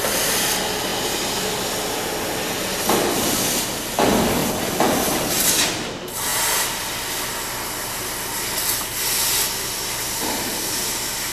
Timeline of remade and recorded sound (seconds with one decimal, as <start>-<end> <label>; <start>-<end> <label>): 0.0-11.3 recorded